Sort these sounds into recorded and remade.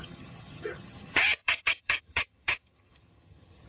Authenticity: remade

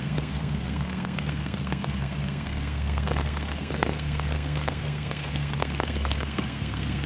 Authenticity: remade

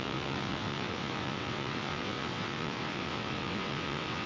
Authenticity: remade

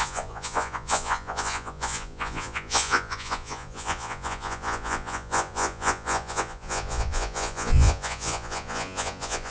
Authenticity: remade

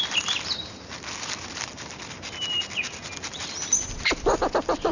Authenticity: recorded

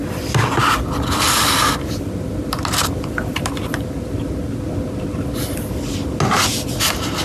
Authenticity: recorded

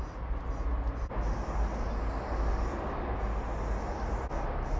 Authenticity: recorded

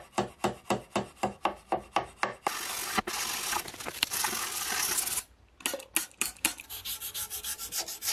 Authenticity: recorded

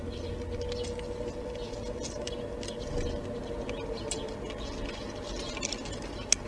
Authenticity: recorded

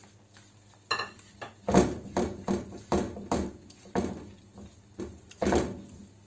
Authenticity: recorded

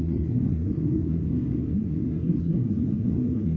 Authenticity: remade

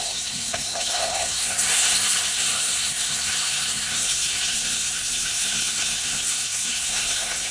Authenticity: remade